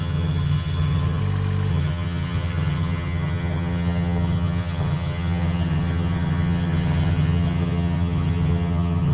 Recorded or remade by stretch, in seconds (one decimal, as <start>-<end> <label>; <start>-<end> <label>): 0.0-1.2 remade; 1.2-1.7 recorded; 1.7-9.1 remade